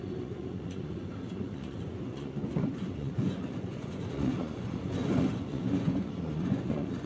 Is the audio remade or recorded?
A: remade